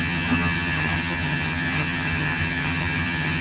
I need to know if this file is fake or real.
fake